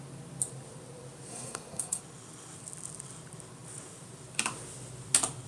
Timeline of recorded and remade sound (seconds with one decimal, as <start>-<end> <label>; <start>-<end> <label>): 0.0-1.3 recorded; 1.3-2.0 remade; 2.0-5.5 recorded